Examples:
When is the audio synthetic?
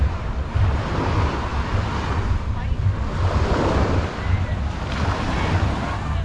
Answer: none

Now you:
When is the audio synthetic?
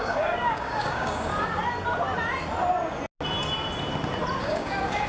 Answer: 0.0-1.3 (codec, DAC); 4.4-5.1